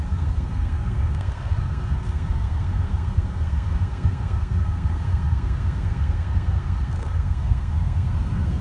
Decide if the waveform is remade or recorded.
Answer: remade